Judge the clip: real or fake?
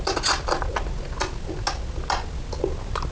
real